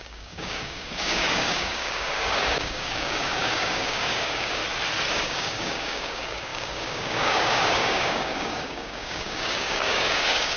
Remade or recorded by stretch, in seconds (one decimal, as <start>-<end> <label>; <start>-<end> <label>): 0.0-4.6 remade; 4.6-5.1 recorded; 5.1-10.6 remade